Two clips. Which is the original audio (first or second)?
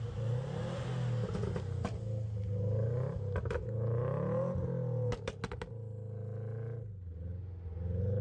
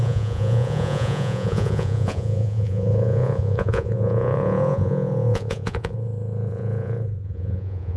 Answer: first